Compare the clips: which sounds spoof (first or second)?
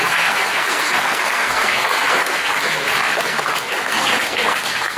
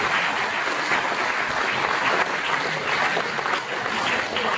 first